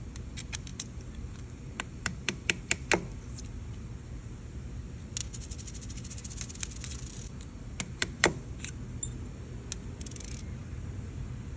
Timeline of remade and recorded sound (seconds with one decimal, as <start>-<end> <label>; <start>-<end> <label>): 0.0-0.7 recorded; 0.7-2.9 remade; 2.9-5.2 recorded; 5.2-6.8 remade; 6.8-8.0 recorded; 8.0-8.6 remade; 8.6-10.6 recorded; 10.6-11.2 remade; 11.2-11.6 recorded